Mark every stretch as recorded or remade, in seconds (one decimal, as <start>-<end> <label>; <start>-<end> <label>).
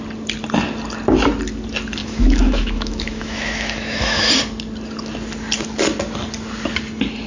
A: 0.0-2.0 recorded; 2.0-4.3 remade; 4.3-7.3 recorded